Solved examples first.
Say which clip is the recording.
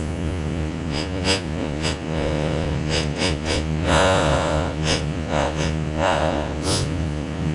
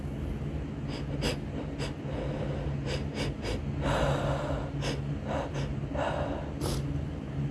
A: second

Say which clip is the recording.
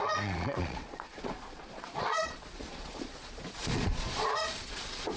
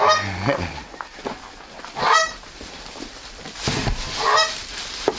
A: second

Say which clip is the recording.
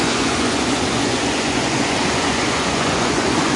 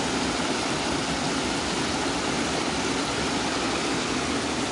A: second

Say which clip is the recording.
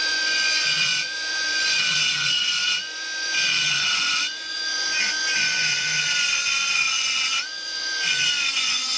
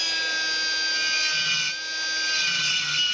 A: second